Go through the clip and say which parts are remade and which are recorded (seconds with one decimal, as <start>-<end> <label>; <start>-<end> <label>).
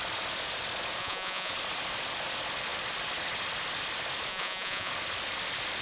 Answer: 0.0-1.0 recorded; 1.0-1.5 remade; 1.5-4.3 recorded; 4.3-4.9 remade; 4.9-5.8 recorded